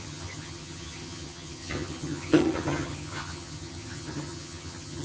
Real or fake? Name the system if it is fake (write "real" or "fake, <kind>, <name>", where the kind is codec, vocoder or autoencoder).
fake, vocoder, HiFi-GAN